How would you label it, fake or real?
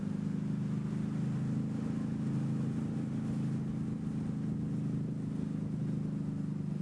real